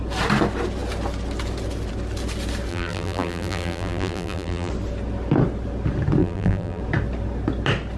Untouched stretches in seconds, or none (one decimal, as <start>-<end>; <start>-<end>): 0.0-2.7; 4.7-6.2; 6.8-8.0